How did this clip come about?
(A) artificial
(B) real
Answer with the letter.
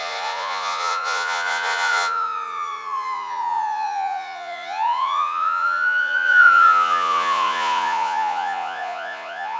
A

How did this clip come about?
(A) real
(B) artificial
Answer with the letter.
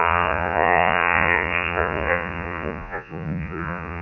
B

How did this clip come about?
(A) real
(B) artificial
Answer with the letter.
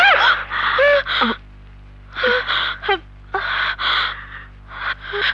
A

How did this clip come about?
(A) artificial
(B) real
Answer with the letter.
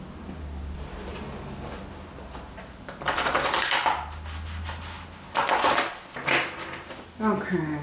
B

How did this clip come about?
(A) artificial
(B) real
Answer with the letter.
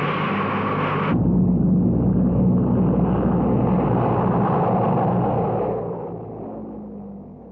B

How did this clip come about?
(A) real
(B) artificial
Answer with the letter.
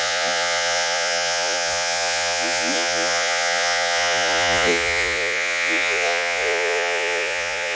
B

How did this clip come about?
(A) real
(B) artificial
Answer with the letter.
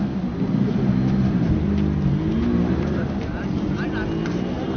A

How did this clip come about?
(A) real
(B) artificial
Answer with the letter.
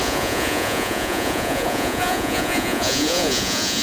B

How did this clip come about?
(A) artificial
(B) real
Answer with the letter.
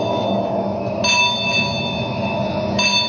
B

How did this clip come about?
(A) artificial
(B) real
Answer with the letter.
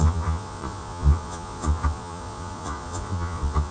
A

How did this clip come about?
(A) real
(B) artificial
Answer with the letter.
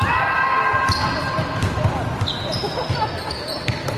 A